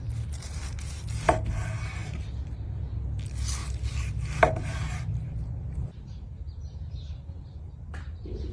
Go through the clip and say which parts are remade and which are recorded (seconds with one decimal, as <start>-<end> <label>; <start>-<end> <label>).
0.0-2.0 recorded; 2.0-2.8 remade; 2.8-7.9 recorded; 7.9-8.5 remade